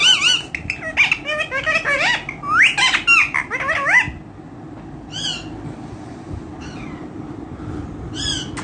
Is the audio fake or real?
real